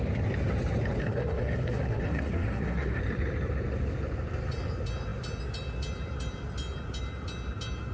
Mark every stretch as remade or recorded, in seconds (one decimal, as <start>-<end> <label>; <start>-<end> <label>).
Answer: 0.0-1.0 recorded; 1.0-3.0 remade; 3.0-7.9 recorded